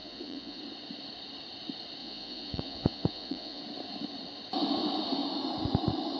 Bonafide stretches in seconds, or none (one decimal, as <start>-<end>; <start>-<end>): 0.6-2.0; 3.6-6.2